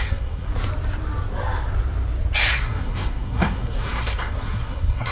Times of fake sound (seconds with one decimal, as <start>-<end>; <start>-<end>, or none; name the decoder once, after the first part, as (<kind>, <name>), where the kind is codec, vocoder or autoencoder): 0.0-0.5 (codec, SNAC); 2.5-5.1